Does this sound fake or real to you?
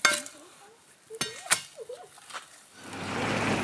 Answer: real